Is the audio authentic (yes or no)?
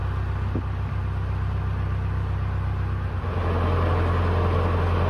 yes